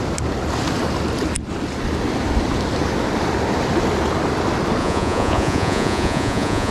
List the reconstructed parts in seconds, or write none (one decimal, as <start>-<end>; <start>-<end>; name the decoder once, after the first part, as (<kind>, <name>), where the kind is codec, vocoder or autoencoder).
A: 4.8-6.7 (vocoder, Vocos)